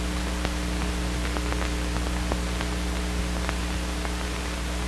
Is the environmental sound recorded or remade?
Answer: recorded